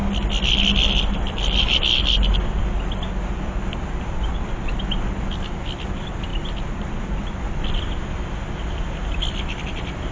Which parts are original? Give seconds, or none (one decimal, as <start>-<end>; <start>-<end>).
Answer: 0.0-10.1